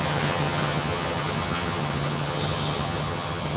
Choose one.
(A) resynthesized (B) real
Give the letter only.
A